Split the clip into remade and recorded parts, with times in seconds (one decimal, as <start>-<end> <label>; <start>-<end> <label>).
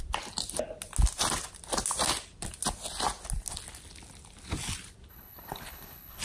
0.0-5.1 recorded; 5.1-6.2 remade